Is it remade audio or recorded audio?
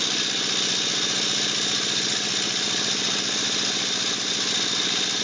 recorded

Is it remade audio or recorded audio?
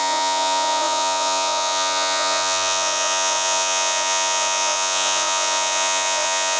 remade